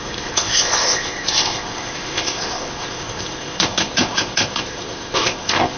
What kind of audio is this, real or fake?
fake